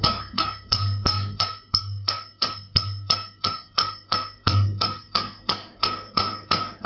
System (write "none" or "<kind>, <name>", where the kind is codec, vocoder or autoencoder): codec, SNAC